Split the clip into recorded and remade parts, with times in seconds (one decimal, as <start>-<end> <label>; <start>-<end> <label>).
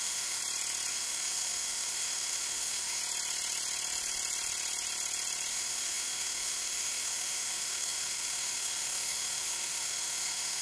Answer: 0.0-0.4 remade; 0.4-0.9 recorded; 0.9-3.0 remade; 3.0-5.5 recorded; 5.5-10.6 remade